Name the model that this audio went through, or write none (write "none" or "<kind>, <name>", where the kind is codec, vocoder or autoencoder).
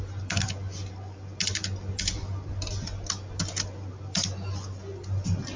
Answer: none